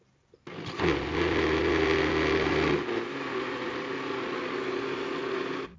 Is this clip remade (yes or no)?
no